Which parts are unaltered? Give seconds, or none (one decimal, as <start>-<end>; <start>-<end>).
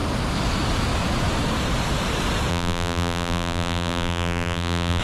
0.0-2.5